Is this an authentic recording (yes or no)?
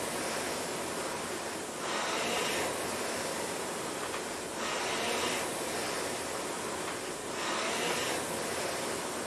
yes